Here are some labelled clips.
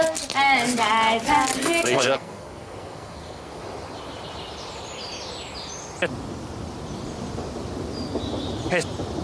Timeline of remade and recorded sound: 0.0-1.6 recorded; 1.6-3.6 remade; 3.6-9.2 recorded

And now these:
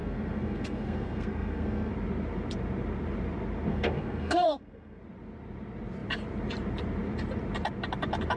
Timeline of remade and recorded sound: 0.0-1.9 remade; 1.9-3.7 recorded; 3.7-5.0 remade; 5.0-8.4 recorded

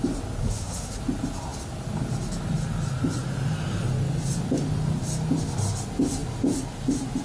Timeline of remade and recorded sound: 0.0-0.4 recorded; 0.4-1.0 remade; 1.0-7.2 recorded

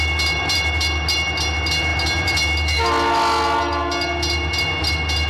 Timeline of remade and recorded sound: 0.0-5.3 recorded

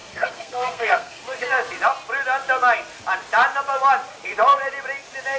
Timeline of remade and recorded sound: 0.0-1.2 remade; 1.2-5.4 recorded

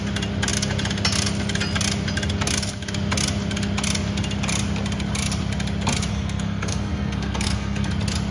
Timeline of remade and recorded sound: 0.0-6.1 recorded; 6.1-7.9 remade; 7.9-8.3 recorded

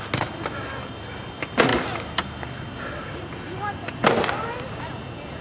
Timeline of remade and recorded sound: 0.0-5.4 recorded